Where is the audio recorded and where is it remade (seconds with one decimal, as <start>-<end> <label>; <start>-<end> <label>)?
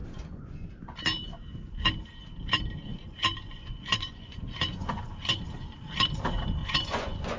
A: 0.0-0.7 remade; 0.7-2.9 recorded; 2.9-5.9 remade; 5.9-6.6 recorded; 6.6-7.4 remade